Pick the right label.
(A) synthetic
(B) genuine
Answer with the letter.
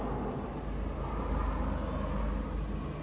B